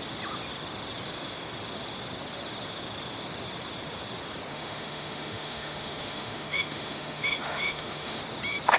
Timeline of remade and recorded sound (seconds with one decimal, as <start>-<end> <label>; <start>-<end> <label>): 0.0-4.5 recorded; 4.5-8.2 remade; 8.2-8.8 recorded